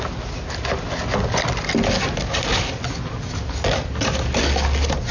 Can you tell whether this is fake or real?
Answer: real